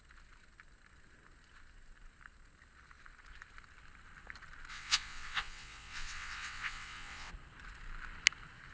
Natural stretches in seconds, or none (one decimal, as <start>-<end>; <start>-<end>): 0.0-4.7; 7.3-8.7